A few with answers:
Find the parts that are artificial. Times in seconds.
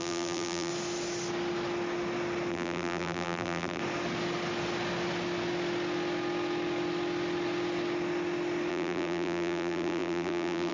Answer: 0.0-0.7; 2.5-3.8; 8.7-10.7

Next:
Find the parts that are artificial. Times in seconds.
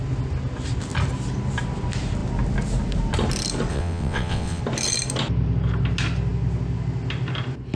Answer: 3.7-4.6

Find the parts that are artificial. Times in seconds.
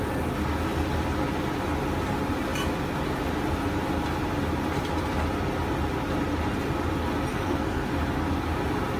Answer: 7.3-7.9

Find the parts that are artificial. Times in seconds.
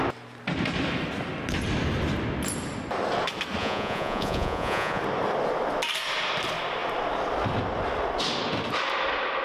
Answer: 3.6-5.0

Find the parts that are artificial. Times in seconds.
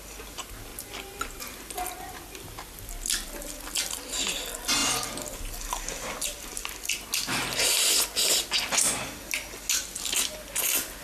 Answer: none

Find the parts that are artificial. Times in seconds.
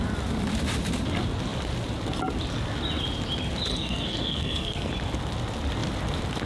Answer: 3.7-4.9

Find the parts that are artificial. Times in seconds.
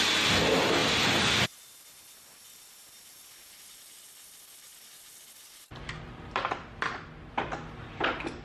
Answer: none